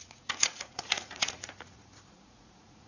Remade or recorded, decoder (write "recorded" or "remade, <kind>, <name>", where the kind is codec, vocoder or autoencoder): remade, vocoder, Vocos